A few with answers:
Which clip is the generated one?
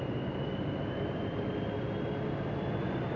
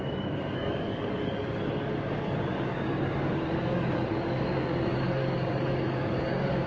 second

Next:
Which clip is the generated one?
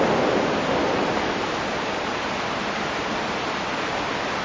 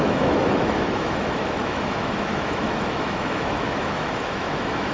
second